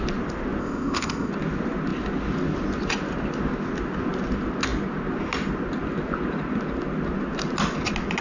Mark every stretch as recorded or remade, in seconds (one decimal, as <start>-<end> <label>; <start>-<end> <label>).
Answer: 0.0-0.6 recorded; 0.6-1.3 remade; 1.3-8.2 recorded